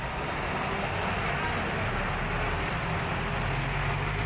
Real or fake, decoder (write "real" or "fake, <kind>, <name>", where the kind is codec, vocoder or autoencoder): real